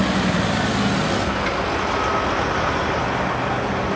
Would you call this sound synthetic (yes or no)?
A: no